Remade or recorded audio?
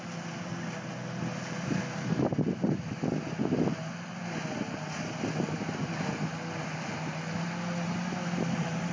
recorded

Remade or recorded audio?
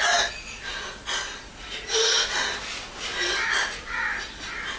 recorded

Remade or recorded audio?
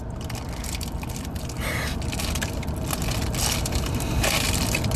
remade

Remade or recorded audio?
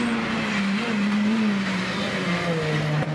recorded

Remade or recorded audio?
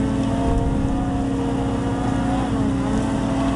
recorded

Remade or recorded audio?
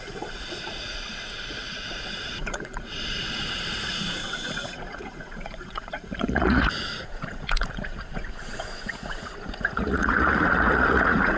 remade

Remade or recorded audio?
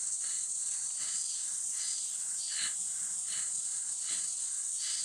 recorded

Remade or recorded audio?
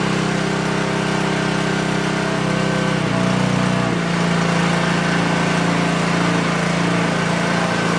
recorded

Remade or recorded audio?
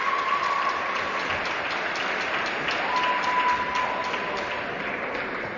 recorded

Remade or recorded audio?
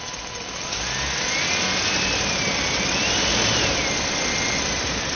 recorded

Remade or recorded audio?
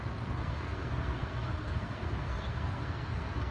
remade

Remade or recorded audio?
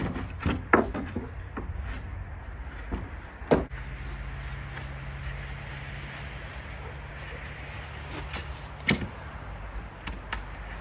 recorded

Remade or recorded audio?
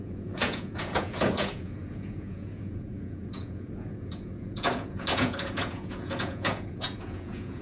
remade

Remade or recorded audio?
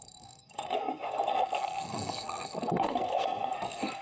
remade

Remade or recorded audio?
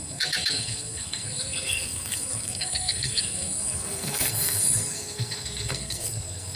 remade